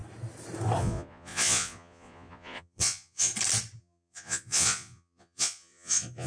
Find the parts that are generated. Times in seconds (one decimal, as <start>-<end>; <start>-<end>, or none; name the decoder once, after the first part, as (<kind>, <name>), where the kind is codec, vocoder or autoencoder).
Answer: 0.8-3.3 (vocoder, Vocos); 3.8-6.3